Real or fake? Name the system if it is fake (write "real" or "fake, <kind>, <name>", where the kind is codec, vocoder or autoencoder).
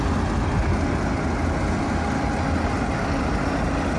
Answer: real